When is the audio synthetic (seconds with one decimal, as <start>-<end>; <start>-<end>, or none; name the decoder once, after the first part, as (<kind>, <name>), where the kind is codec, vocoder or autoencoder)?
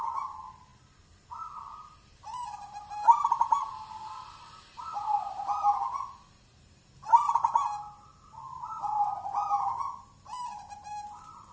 none